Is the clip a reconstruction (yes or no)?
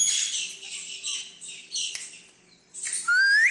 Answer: no